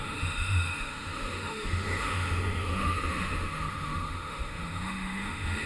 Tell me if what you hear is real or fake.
fake